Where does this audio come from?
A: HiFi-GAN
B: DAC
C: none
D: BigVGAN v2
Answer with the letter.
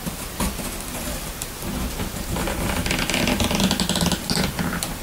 C